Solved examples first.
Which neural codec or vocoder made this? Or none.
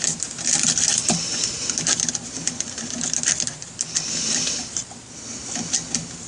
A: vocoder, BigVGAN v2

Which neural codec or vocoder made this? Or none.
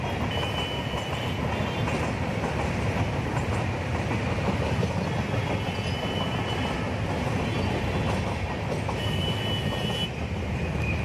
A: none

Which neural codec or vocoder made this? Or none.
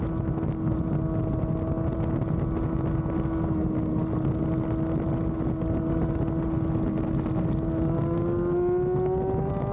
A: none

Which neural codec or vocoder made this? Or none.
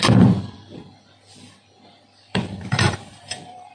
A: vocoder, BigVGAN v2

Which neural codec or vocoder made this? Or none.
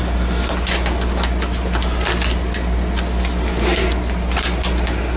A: none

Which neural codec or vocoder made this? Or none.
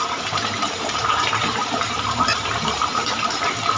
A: vocoder, BigVGAN v2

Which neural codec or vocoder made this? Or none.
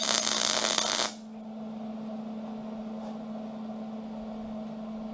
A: none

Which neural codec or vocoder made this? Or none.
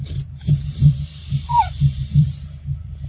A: vocoder, BigVGAN v2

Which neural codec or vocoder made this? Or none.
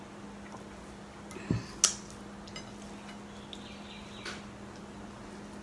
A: none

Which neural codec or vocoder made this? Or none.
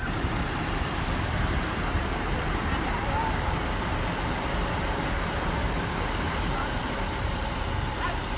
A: vocoder, BigVGAN v2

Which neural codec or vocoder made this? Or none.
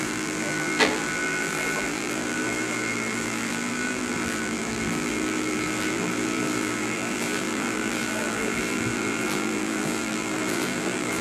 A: vocoder, BigVGAN v2